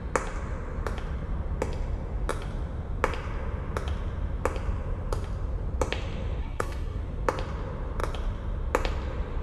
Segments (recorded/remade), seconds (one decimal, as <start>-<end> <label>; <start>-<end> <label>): 0.0-6.4 recorded; 6.4-7.0 remade; 7.0-9.4 recorded